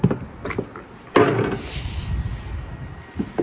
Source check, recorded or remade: recorded